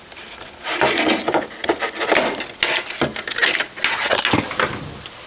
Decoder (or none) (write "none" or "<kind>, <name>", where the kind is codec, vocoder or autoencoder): none